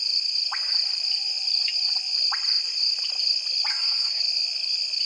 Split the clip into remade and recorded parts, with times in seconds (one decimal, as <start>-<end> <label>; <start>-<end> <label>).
0.0-3.7 recorded; 3.7-4.2 remade; 4.2-5.1 recorded